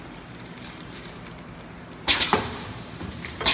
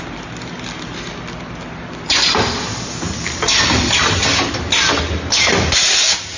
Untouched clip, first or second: second